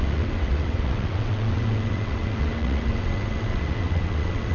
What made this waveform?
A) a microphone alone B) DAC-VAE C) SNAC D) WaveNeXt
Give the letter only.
D